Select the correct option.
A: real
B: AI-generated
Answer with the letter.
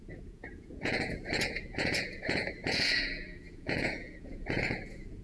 B